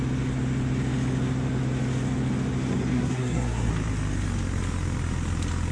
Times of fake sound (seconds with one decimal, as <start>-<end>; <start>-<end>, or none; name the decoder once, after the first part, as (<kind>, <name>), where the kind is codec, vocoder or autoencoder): 2.9-3.7 (codec, SNAC)